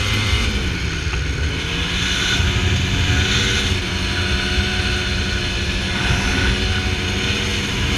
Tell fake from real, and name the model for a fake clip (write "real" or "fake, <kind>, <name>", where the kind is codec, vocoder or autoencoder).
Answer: real